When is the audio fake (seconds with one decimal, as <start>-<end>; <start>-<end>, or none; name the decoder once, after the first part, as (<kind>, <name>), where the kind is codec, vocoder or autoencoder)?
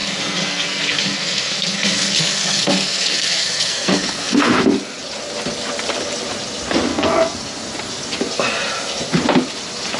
0.0-4.6 (codec, SNAC); 6.9-7.4